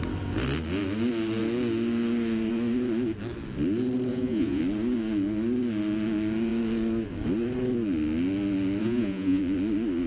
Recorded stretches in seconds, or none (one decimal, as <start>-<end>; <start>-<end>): 0.0-4.1; 4.6-8.8; 9.4-10.1